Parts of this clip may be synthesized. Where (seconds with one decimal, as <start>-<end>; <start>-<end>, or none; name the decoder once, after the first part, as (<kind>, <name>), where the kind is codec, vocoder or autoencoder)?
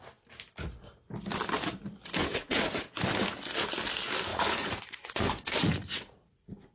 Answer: 2.2-2.9 (vocoder, Vocos); 4.3-6.7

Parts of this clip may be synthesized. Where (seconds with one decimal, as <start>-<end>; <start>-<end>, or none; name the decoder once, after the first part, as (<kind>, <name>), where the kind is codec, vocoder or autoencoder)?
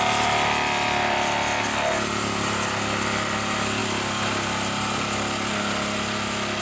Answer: none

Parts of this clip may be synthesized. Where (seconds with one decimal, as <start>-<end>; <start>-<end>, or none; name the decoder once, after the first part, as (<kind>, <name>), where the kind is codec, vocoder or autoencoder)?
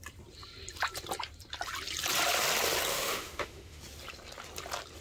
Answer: 2.9-3.8 (autoencoder, DAC-VAE)